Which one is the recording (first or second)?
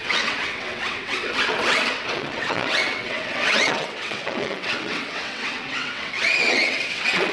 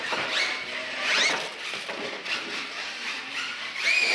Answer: second